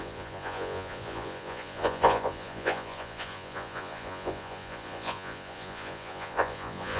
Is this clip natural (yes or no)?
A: no